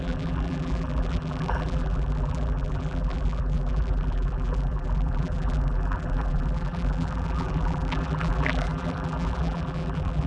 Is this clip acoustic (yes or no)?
no